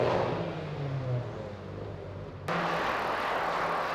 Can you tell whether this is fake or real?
real